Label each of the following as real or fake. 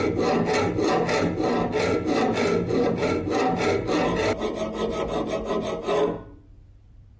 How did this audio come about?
real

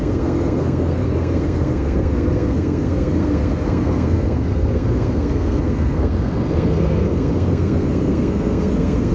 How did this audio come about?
fake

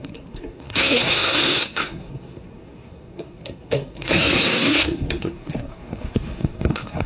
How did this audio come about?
fake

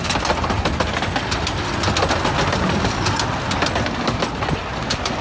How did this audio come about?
real